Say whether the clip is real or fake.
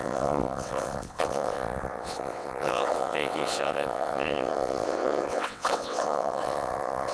fake